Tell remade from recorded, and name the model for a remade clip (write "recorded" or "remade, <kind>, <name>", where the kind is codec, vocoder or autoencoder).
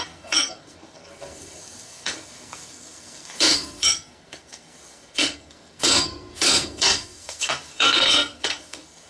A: remade, codec, SNAC